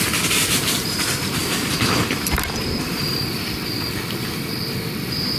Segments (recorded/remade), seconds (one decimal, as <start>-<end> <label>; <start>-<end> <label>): 0.0-1.4 recorded; 1.4-4.6 remade; 4.6-5.4 recorded